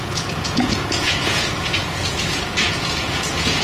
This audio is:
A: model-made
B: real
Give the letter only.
A